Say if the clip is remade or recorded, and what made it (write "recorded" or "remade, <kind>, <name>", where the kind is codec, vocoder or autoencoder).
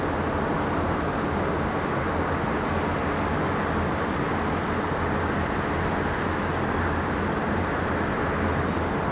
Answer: recorded